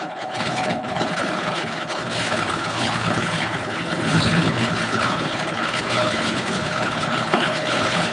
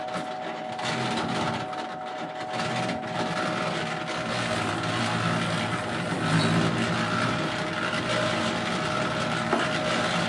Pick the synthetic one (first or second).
first